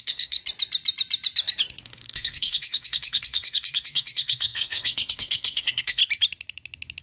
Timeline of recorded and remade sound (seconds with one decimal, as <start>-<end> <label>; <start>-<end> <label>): 0.0-0.4 remade; 0.4-1.8 recorded; 1.8-6.0 remade; 6.0-7.0 recorded